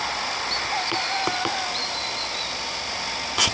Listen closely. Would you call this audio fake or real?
real